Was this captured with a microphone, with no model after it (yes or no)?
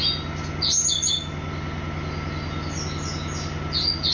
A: yes